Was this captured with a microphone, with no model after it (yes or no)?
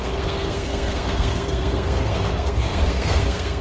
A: no